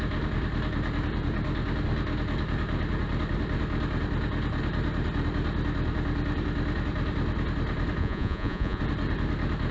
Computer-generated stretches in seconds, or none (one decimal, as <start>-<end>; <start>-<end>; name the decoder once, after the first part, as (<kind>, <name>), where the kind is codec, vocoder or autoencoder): 8.0-8.8 (vocoder, Vocos)